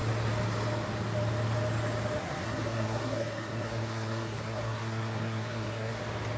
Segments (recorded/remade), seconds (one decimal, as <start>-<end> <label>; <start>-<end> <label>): 0.0-2.2 recorded; 2.2-6.0 remade; 6.0-6.4 recorded